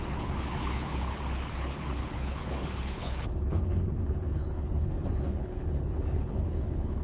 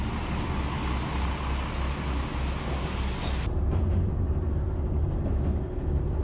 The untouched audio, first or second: second